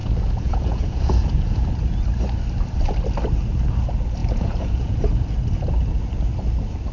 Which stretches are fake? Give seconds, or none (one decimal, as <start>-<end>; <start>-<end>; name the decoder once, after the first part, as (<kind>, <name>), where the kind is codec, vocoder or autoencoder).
0.0-1.6 (vocoder, Vocos); 4.2-5.0